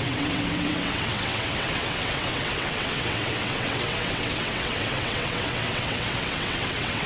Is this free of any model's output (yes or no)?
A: no